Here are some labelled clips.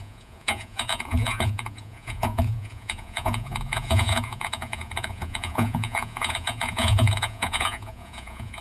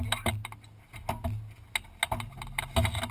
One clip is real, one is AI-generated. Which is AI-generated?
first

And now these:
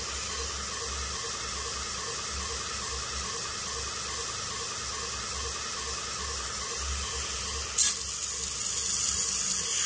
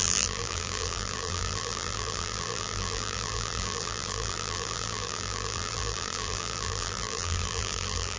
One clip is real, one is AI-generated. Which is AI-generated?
second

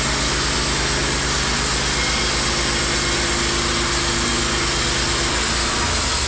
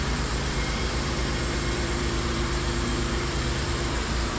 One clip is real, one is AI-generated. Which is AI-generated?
second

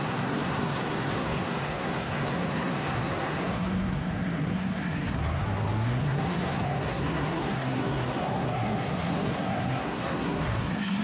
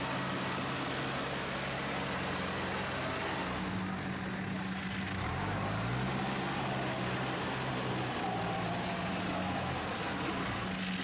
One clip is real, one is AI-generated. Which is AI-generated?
first